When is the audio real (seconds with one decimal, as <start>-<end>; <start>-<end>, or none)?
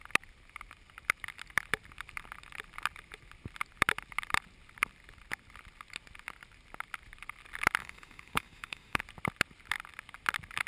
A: 0.0-7.8; 9.0-10.7